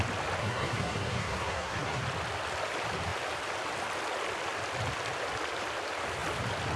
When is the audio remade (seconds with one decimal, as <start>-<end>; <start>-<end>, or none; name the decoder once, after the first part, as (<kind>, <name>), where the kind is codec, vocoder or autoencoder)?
0.4-2.0 (codec, SNAC)